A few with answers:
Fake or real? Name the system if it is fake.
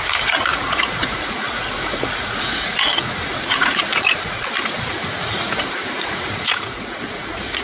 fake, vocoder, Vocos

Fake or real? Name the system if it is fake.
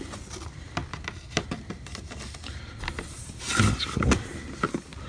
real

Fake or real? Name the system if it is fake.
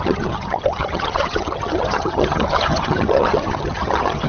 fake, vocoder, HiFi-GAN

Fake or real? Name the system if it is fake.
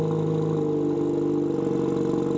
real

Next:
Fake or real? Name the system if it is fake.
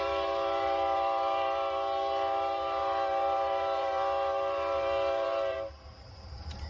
fake, vocoder, BigVGAN v2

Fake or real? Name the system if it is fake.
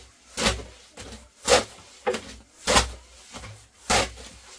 real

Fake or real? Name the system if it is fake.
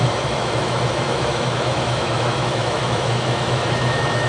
fake, autoencoder, DAC-VAE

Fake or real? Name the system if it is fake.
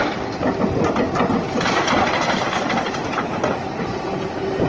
real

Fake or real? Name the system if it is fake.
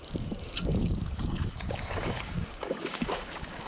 fake, codec, DAC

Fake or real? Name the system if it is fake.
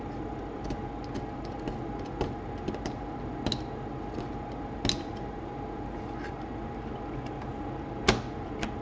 real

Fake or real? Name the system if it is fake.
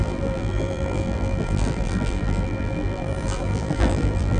fake, vocoder, BigVGAN v2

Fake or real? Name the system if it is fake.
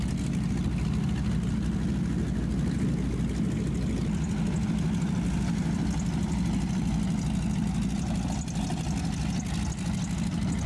real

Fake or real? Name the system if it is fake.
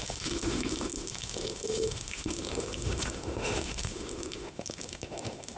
fake, autoencoder, DAC-VAE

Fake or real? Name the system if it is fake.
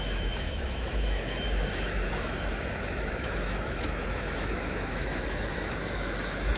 fake, autoencoder, DAC-VAE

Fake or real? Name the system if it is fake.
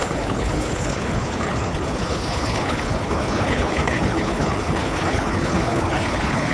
fake, codec, HILCodec